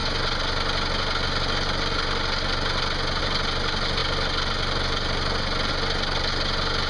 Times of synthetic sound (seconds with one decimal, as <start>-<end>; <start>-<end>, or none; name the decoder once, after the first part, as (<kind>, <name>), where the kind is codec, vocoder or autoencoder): none